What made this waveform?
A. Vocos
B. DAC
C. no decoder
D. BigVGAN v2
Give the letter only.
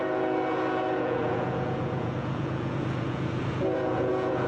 A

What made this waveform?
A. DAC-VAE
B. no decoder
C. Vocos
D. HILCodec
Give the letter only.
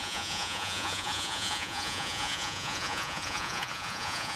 C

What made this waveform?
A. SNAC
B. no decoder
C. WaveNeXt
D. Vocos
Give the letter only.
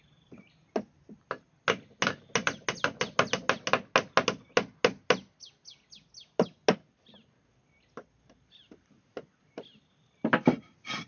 B